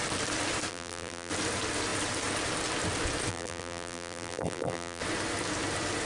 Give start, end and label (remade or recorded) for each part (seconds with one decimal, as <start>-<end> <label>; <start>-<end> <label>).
0.0-0.7 recorded; 0.7-1.3 remade; 1.3-3.3 recorded; 3.3-5.0 remade; 5.0-6.1 recorded